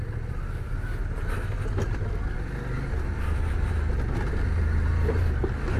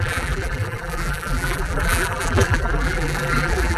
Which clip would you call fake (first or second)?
second